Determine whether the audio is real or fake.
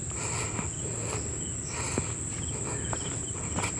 real